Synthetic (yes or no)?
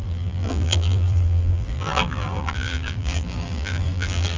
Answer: yes